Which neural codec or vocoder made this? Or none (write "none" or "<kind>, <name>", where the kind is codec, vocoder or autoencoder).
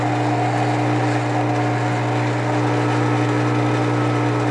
none